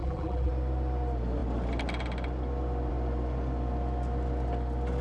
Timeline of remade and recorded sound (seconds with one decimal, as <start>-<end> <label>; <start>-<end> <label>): 0.0-0.5 remade; 0.5-5.0 recorded